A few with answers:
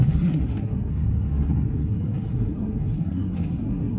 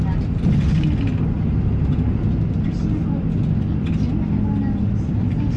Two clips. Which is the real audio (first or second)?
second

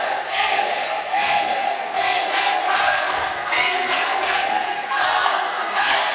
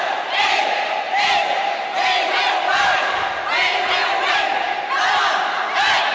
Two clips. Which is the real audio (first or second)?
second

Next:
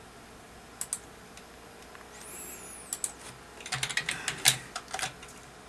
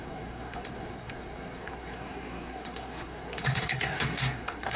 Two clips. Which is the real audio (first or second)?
first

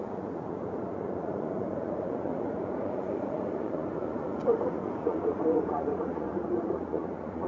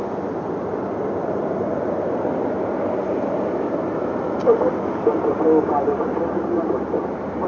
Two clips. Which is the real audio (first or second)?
second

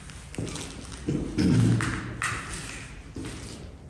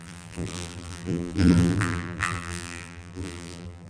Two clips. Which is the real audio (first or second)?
first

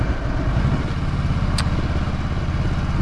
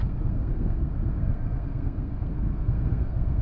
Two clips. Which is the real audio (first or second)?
first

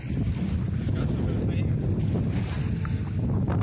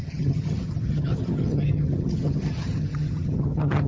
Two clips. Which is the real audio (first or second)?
first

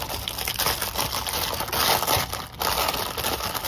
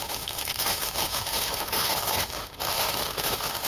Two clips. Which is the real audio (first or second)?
first